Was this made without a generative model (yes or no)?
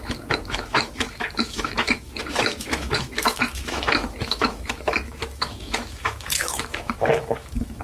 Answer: no